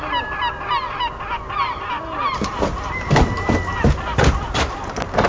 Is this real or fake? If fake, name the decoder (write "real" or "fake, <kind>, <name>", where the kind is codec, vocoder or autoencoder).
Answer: real